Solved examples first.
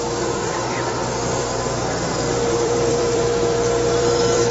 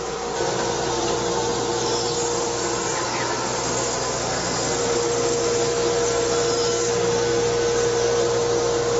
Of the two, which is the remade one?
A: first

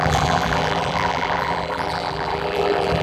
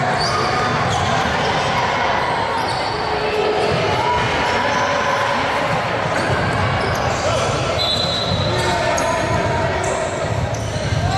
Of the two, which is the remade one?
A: first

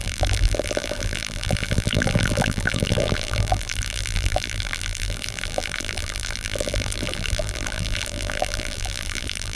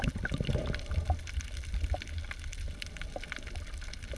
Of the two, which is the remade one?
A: first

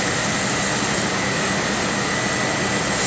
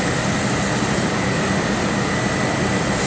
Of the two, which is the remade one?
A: second